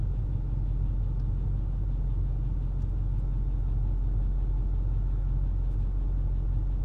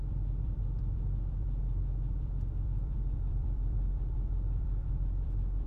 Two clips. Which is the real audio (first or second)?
first